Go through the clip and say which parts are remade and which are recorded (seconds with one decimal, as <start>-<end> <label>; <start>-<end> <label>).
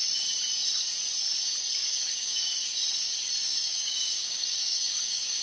0.0-1.8 recorded; 1.8-2.4 remade; 2.4-3.4 recorded; 3.4-5.4 remade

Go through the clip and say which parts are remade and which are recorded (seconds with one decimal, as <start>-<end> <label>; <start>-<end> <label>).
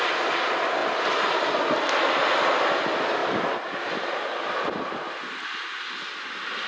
0.0-6.7 recorded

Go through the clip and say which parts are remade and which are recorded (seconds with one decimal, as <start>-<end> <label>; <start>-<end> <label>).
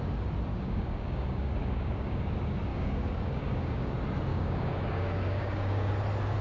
0.0-0.5 recorded; 0.5-2.3 remade; 2.3-2.7 recorded; 2.7-3.9 remade; 3.9-4.3 recorded; 4.3-5.9 remade; 5.9-6.4 recorded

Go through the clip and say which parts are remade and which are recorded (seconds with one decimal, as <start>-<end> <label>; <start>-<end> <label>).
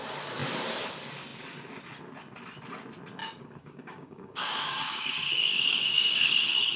0.0-3.2 recorded; 3.2-6.8 remade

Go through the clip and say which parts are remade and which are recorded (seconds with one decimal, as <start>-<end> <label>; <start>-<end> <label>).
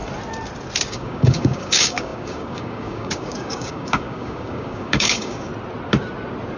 0.0-0.9 recorded; 0.9-5.5 remade; 5.5-6.6 recorded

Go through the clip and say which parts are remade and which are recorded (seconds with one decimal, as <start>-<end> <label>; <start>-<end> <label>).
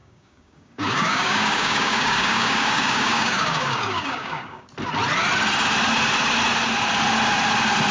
0.0-4.7 remade; 4.7-7.9 recorded